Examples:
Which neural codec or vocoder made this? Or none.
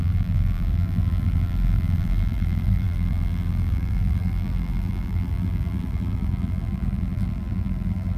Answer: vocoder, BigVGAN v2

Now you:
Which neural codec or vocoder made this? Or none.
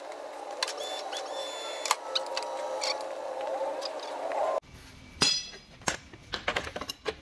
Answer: none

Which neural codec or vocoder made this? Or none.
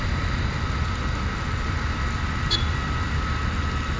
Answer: none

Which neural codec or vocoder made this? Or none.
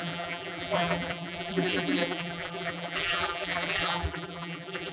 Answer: vocoder, BigVGAN v2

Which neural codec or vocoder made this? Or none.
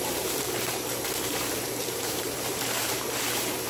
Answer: vocoder, BigVGAN v2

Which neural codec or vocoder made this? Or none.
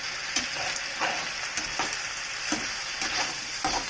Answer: vocoder, BigVGAN v2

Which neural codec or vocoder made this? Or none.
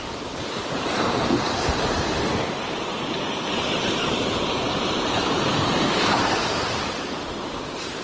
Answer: vocoder, BigVGAN v2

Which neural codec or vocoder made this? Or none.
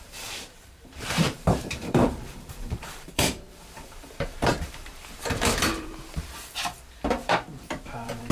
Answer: vocoder, BigVGAN v2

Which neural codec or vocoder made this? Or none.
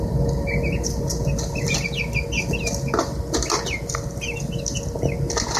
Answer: none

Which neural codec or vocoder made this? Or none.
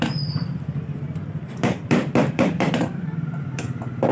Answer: vocoder, BigVGAN v2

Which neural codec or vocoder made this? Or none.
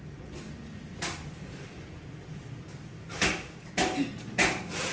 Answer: none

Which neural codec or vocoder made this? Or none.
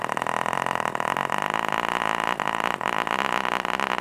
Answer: none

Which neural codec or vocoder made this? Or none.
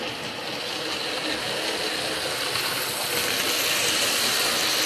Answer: none